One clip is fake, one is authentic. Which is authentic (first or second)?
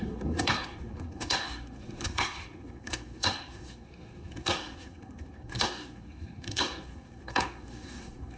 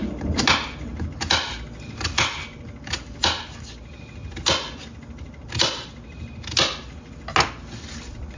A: second